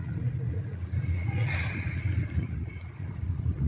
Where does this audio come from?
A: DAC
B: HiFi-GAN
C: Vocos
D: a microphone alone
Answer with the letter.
C